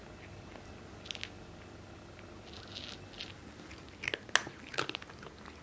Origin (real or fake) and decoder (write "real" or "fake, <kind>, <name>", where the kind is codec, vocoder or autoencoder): real